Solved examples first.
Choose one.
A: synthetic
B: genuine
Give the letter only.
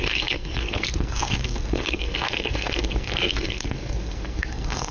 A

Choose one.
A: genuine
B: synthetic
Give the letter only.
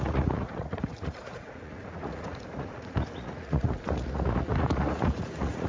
B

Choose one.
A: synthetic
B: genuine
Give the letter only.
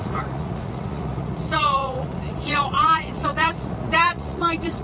A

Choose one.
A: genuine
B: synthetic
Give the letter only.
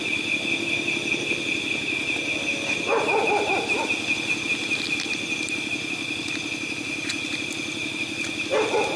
A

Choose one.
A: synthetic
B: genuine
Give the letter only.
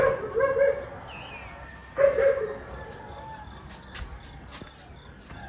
B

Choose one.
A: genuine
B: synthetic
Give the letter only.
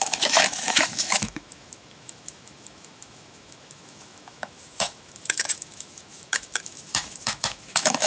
B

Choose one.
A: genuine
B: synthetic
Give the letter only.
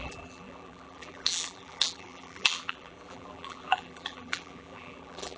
B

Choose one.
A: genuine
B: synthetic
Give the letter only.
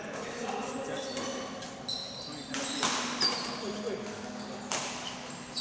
A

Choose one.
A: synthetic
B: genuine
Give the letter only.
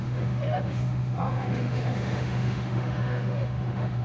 A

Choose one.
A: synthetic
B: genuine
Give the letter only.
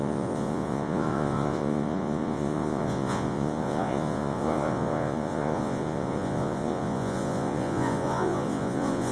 A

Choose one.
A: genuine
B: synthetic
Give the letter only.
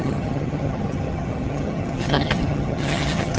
B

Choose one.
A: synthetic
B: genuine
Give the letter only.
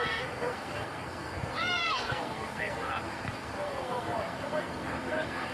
A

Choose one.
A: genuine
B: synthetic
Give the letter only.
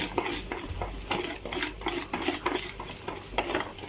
A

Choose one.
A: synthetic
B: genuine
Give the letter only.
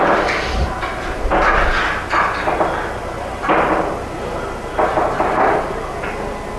B